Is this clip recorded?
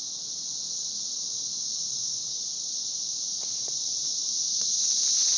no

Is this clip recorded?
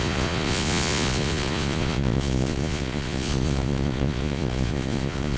no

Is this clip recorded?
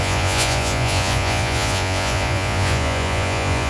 no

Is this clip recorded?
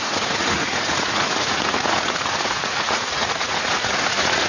no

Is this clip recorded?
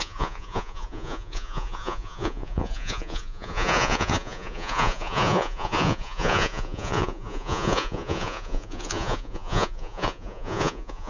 no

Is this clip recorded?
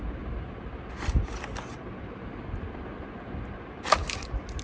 yes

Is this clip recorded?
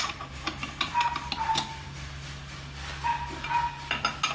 yes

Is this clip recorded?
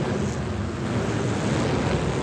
yes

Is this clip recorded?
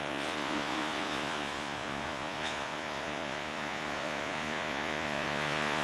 no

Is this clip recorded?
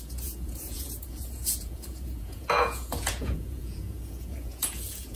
no